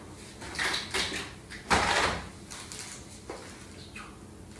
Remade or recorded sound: recorded